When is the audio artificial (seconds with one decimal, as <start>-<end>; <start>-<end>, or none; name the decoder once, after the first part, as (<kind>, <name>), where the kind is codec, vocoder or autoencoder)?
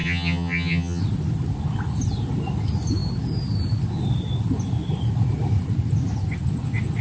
0.0-1.0 (vocoder, HiFi-GAN)